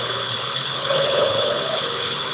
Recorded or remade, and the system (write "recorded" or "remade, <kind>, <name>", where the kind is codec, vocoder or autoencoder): remade, codec, HILCodec